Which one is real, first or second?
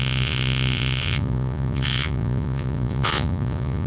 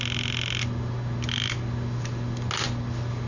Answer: second